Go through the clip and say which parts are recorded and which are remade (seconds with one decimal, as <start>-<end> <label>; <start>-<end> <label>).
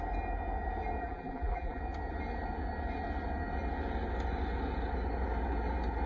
0.0-1.0 recorded; 1.0-1.8 remade; 1.8-6.1 recorded